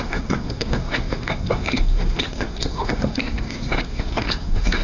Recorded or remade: remade